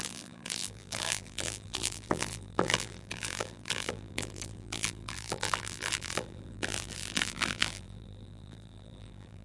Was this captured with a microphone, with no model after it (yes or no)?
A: no